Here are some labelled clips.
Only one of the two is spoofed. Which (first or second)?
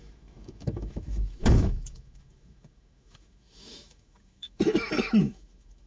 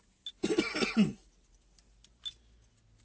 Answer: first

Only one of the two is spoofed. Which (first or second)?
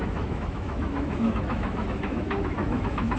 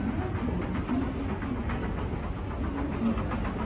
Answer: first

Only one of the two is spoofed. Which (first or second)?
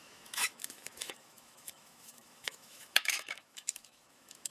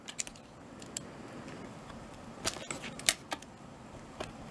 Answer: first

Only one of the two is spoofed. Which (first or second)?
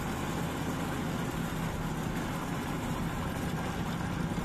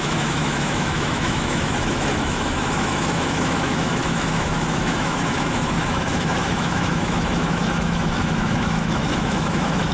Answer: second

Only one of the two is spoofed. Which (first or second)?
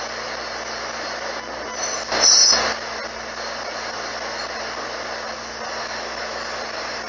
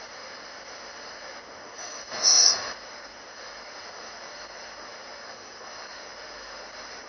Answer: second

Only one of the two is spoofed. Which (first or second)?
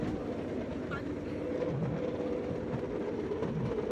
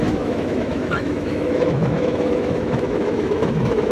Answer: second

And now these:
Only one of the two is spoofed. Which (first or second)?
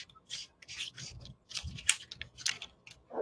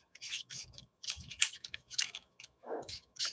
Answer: second